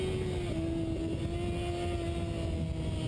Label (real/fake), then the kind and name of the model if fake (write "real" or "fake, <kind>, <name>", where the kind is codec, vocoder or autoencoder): real